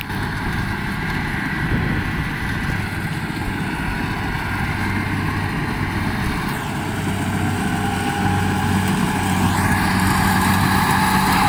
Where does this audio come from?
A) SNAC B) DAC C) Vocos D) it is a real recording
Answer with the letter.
D